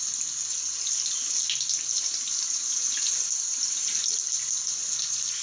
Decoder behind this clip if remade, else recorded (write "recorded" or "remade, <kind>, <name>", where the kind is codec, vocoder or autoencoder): recorded